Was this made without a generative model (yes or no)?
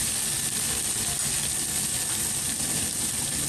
yes